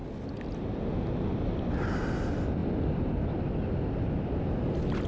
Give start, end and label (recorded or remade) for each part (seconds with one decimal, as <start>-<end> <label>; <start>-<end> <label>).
0.0-5.1 recorded